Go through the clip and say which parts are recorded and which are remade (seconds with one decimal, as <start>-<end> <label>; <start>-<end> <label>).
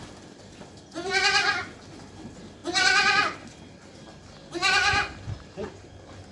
0.0-6.3 recorded